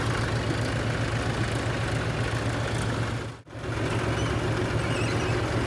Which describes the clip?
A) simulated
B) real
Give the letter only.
B